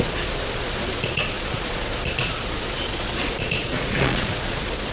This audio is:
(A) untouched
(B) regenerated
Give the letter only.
B